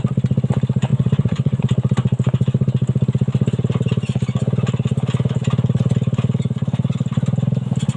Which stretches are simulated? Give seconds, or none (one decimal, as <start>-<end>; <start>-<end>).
0.9-1.6